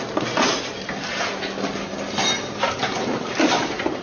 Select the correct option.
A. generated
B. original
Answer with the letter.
B